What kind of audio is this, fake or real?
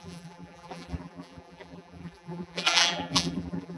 fake